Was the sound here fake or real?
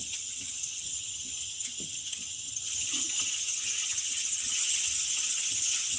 fake